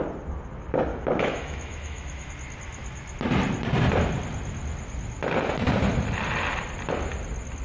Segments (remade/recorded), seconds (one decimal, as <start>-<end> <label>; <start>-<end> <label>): 0.0-0.9 recorded; 0.9-2.3 remade; 2.3-7.6 recorded